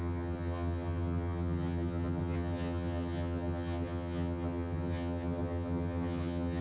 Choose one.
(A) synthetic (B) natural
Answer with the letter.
A